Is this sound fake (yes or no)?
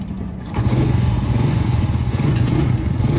yes